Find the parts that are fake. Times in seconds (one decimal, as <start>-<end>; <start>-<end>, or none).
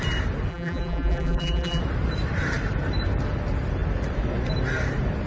0.5-1.8